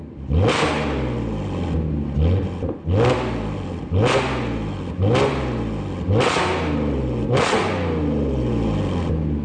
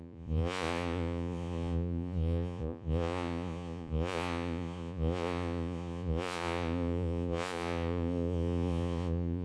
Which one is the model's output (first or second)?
second